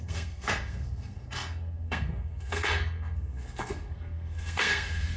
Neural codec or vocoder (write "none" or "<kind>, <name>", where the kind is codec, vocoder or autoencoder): codec, SNAC